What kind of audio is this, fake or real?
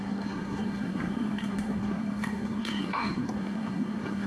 fake